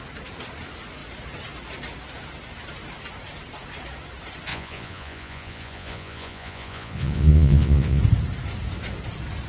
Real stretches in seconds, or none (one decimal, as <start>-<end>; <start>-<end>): 0.0-4.5; 8.0-9.5